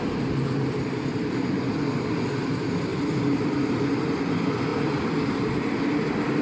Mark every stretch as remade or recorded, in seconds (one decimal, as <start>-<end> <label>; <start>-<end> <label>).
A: 0.0-2.9 recorded; 2.9-3.9 remade; 3.9-4.7 recorded; 4.7-5.4 remade; 5.4-6.4 recorded